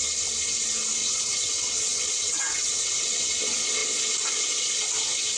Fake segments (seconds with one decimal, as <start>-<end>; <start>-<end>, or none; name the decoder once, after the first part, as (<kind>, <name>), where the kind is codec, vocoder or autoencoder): 1.0-2.9 (vocoder, WaveNeXt)